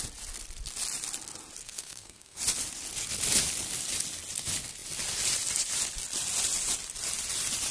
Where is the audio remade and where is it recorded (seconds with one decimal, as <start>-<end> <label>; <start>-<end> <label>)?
0.0-1.6 recorded; 1.6-2.4 remade; 2.4-7.7 recorded